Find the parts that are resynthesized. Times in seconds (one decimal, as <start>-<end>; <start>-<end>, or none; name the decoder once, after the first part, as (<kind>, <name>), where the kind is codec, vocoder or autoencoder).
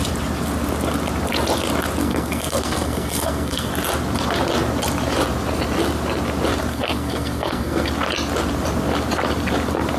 2.0-3.7 (codec, SNAC); 6.7-7.9